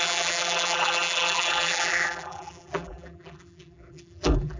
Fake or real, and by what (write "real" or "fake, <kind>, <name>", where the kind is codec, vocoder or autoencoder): fake, vocoder, BigVGAN v2